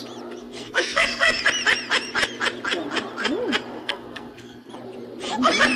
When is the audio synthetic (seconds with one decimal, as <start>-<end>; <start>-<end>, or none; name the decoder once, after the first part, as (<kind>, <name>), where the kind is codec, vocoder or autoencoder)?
0.4-1.4 (codec, SNAC); 3.8-4.7